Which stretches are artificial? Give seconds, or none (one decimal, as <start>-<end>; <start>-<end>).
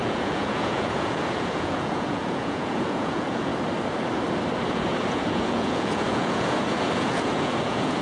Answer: 0.0-3.5; 4.7-8.0